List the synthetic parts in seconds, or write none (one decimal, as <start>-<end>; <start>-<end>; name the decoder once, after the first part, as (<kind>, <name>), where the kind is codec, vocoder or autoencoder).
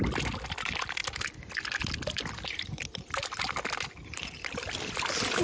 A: none